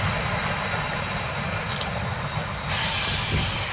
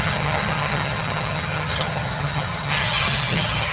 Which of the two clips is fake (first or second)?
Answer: second